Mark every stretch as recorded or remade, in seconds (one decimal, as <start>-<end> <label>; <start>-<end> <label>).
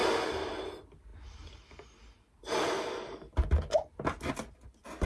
0.0-5.1 recorded